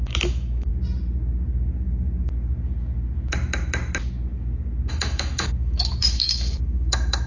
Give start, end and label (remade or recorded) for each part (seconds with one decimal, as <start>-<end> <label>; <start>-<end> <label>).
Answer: 0.0-0.7 remade; 0.7-4.9 recorded; 4.9-7.3 remade